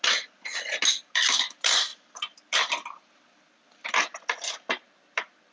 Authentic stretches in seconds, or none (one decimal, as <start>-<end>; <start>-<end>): 0.0-5.5